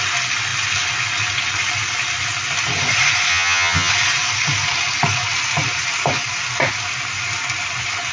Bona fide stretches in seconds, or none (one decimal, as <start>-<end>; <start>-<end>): 0.0-3.3; 3.9-8.1